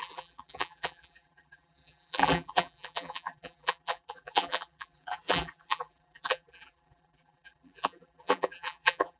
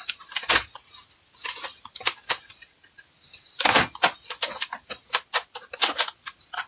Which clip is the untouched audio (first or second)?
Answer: second